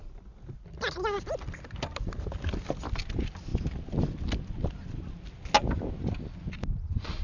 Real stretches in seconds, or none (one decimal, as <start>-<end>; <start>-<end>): 0.0-7.2